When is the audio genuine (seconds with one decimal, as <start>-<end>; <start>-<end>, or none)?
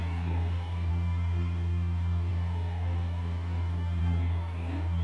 none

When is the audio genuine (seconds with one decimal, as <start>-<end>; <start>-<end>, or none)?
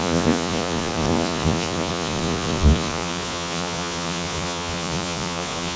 none